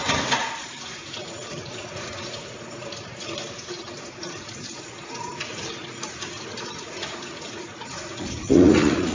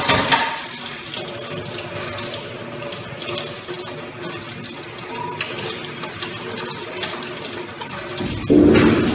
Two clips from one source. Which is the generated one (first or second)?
first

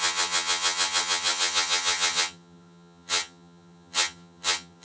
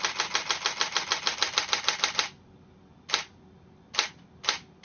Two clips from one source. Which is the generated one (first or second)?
first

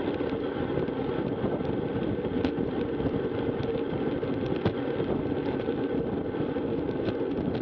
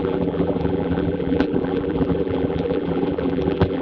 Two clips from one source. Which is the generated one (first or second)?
second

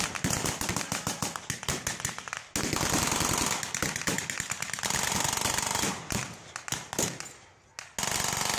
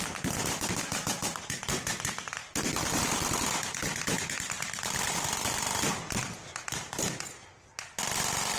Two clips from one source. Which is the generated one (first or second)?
second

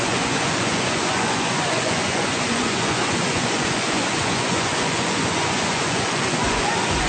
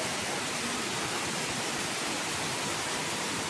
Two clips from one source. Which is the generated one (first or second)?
first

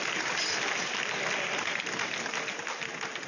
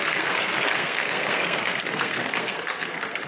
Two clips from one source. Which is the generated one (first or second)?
second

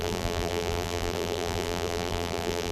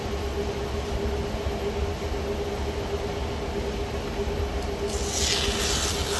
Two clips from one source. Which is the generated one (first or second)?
first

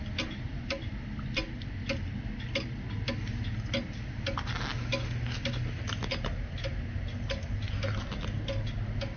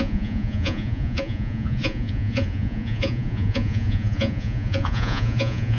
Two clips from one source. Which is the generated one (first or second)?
second